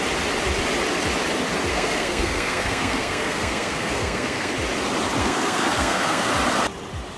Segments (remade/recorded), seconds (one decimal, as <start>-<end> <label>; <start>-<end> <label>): 0.0-1.7 recorded; 1.7-4.5 remade; 4.5-5.2 recorded; 5.2-6.3 remade; 6.3-7.2 recorded

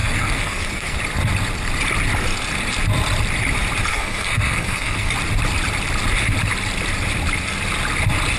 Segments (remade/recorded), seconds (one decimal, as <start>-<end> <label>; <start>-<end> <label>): 0.0-1.0 remade; 1.0-3.9 recorded; 3.9-5.1 remade; 5.1-8.4 recorded